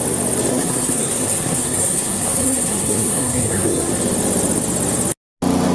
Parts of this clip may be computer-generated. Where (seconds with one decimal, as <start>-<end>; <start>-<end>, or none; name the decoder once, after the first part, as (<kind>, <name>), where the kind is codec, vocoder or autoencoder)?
0.5-3.9 (codec, SNAC)